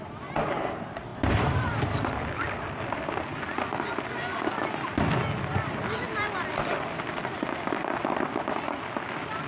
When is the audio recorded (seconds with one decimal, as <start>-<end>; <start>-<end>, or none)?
0.0-1.1; 2.1-3.3; 4.6-6.7; 8.7-9.5